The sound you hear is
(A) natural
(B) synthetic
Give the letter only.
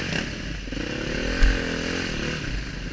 A